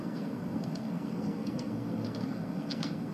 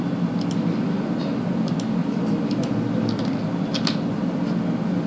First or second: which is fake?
first